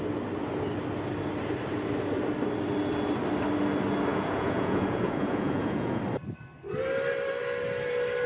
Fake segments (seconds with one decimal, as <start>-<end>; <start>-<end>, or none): 4.1-6.0